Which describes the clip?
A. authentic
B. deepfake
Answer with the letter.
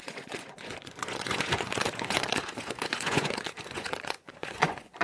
B